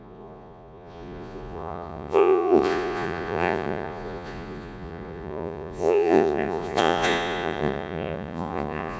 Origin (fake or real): fake